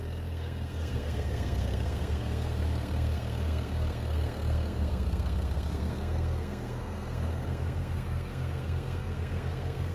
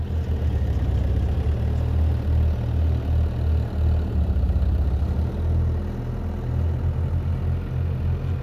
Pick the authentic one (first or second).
second